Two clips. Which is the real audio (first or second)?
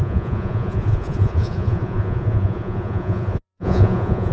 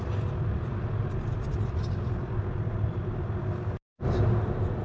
second